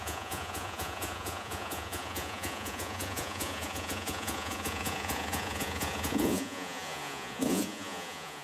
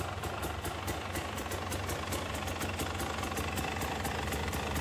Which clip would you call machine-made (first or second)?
first